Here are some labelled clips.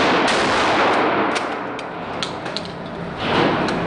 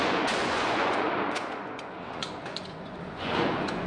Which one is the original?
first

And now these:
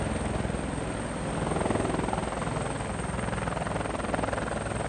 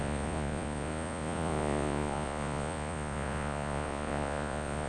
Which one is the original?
first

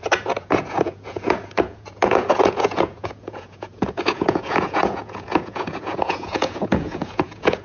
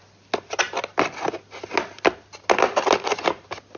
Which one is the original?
second